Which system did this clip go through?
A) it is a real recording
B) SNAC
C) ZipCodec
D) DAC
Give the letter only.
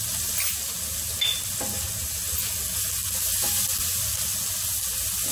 A